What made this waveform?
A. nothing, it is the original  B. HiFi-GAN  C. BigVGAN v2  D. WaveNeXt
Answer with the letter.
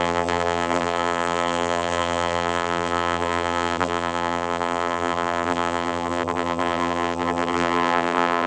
C